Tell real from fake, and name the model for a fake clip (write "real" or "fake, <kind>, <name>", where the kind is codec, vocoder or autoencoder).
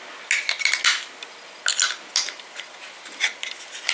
real